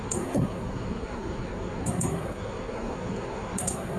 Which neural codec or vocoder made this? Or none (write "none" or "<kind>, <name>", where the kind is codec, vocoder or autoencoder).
codec, SNAC